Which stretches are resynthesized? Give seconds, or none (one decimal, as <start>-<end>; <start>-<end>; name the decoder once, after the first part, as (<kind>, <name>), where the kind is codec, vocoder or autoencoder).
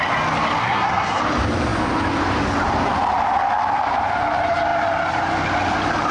0.6-1.2 (codec, SNAC)